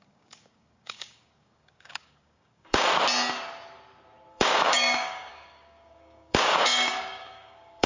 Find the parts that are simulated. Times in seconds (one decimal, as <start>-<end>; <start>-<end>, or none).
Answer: 0.0-2.9; 4.3-7.9